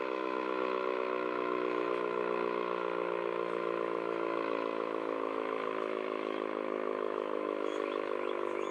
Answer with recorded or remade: remade